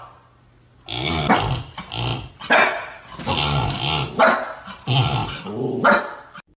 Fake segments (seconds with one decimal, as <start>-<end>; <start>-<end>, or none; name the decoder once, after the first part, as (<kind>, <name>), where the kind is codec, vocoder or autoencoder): 2.1-3.8 (vocoder, BigVGAN v2)